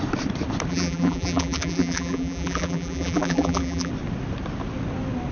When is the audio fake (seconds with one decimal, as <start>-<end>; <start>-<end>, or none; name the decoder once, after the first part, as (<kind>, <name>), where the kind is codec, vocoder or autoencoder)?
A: 0.7-3.9 (vocoder, BigVGAN v2)

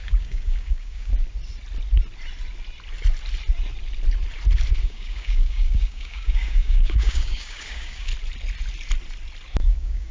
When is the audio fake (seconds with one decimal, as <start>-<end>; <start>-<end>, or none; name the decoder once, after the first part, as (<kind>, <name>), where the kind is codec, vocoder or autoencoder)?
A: 0.0-1.1 (codec, DAC); 4.8-8.1; 9.6-10.1